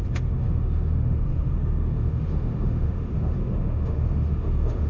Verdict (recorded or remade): remade